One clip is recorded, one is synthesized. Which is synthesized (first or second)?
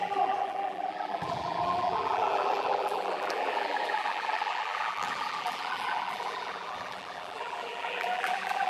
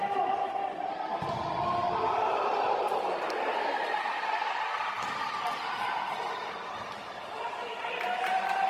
first